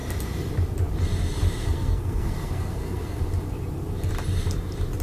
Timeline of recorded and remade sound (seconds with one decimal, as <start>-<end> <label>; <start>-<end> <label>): 0.0-1.6 recorded; 1.6-3.2 remade; 3.2-5.0 recorded

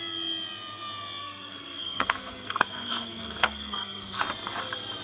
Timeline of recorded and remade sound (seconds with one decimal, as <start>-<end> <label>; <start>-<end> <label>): 0.0-1.2 recorded; 1.2-4.2 remade; 4.2-5.0 recorded

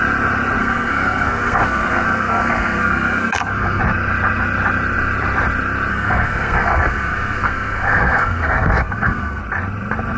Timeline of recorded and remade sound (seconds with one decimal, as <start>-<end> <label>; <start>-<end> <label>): 0.0-0.6 recorded; 0.6-3.8 remade; 3.8-5.9 recorded; 5.9-9.4 remade; 9.4-10.2 recorded

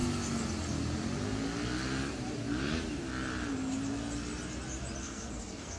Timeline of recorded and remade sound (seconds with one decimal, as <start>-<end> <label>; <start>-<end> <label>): 0.0-5.0 recorded; 5.0-5.8 remade